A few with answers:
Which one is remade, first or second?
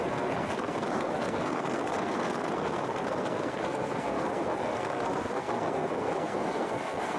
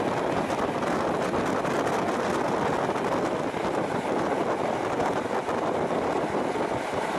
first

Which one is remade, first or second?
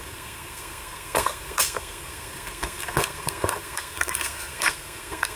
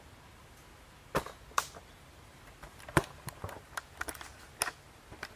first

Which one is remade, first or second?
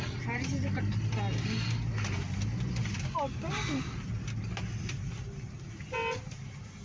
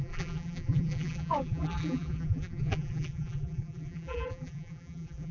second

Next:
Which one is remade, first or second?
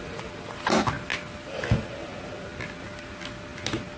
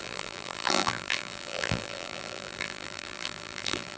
second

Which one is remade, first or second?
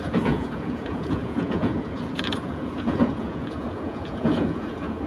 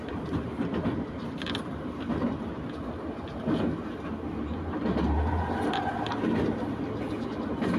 first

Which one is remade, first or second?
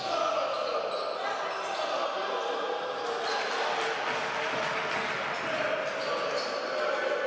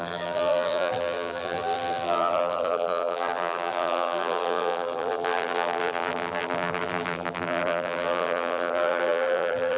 second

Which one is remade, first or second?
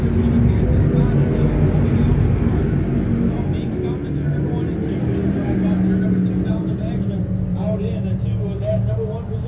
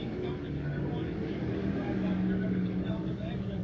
second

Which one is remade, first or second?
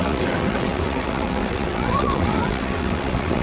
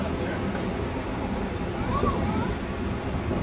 first